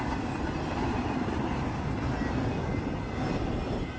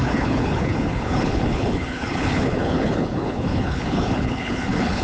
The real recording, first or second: first